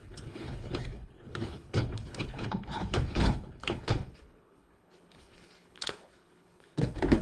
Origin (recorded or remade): remade